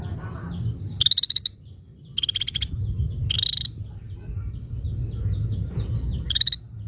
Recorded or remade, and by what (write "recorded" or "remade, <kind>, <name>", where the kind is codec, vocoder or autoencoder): recorded